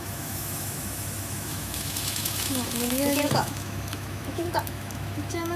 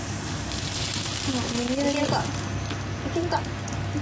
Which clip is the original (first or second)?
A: second